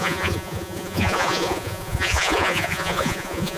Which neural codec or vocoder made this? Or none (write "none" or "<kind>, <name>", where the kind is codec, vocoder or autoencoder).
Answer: vocoder, Vocos